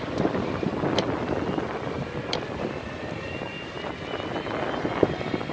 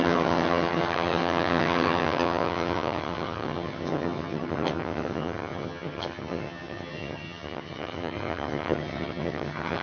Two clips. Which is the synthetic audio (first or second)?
second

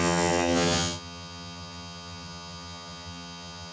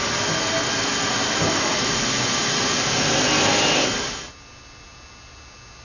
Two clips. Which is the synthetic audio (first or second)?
first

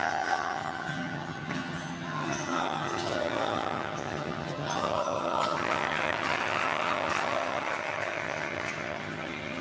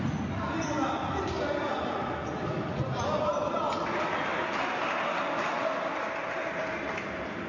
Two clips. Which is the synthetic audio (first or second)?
first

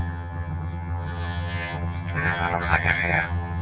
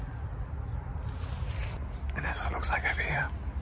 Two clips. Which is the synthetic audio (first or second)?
first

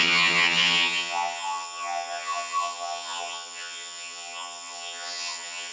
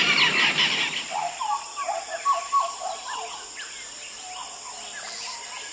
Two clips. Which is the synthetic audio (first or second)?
first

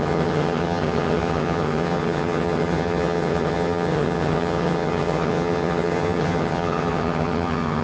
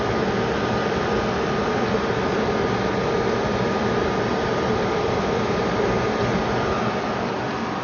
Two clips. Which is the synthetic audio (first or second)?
first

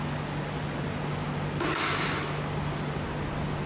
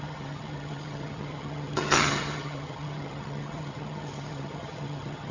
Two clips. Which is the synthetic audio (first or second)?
second